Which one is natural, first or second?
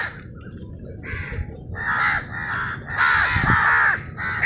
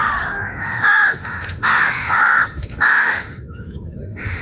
first